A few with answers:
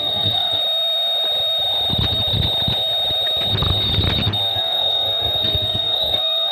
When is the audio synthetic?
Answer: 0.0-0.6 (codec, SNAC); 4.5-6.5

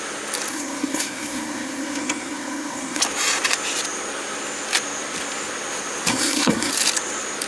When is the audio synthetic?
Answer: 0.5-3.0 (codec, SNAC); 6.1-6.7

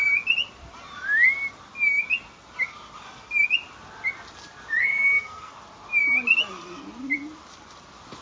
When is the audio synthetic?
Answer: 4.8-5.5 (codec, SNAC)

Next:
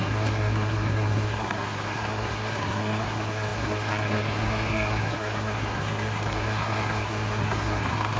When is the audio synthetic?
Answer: 0.0-8.2 (codec, SNAC)

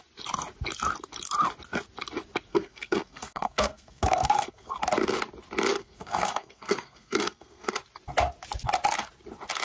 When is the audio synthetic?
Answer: 2.5-4.7 (codec, SNAC); 5.8-7.7

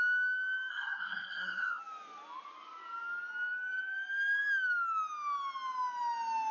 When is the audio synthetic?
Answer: 0.7-1.8 (codec, SNAC)